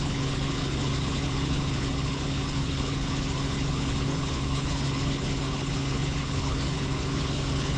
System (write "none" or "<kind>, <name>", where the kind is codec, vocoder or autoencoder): codec, HILCodec